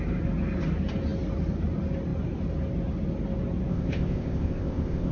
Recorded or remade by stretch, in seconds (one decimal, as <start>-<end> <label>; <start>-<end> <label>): 0.0-3.7 recorded; 3.7-5.1 remade